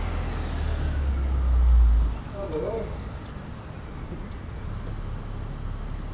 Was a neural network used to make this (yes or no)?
no